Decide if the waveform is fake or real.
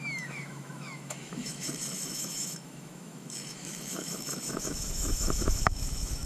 fake